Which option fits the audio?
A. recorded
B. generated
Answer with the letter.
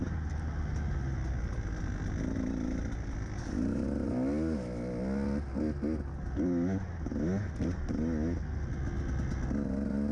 A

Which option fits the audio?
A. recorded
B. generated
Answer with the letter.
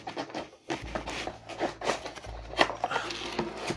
A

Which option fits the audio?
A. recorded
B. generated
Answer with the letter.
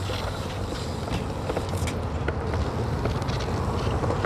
A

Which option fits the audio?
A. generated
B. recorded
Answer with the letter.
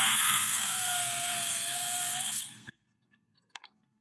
A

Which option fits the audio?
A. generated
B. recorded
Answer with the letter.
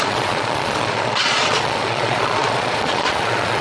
A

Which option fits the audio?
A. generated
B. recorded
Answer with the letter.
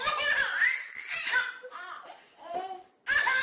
A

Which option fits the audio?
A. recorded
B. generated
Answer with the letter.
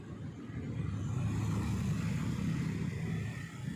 A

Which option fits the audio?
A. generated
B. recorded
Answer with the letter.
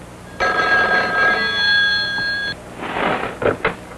B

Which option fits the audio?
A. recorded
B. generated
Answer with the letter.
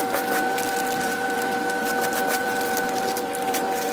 B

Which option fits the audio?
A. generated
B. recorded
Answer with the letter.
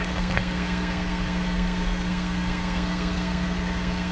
A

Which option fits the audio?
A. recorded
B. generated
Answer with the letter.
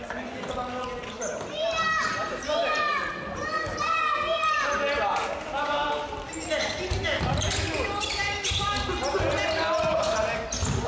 A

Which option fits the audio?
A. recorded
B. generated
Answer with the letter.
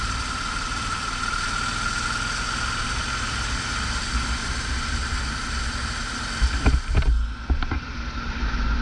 A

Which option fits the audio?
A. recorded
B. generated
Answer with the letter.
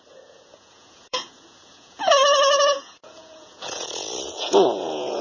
B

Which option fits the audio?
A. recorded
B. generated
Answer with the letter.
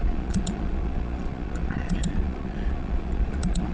B